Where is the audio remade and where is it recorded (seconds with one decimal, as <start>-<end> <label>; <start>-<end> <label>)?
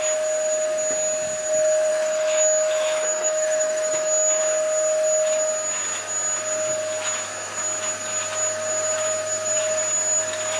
0.0-1.9 recorded; 1.9-4.4 remade; 4.4-10.6 recorded